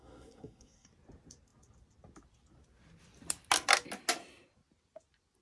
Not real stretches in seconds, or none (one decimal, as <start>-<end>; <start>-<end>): 0.0-0.9